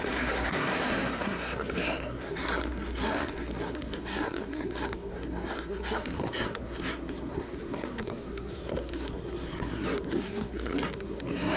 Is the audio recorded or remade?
remade